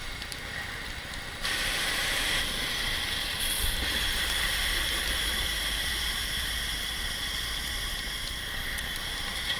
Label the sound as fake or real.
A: fake